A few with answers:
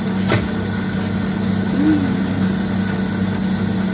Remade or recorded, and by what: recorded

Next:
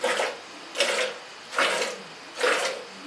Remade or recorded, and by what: recorded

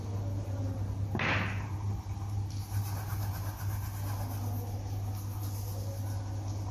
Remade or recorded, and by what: recorded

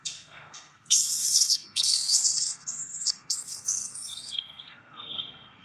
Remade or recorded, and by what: remade, codec, SNAC